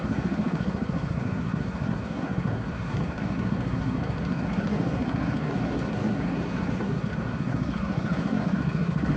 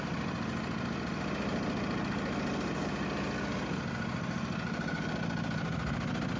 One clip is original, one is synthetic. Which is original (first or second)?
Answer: second